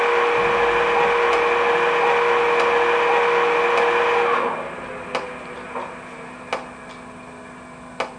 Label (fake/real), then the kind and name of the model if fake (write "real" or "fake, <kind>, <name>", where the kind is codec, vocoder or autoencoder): real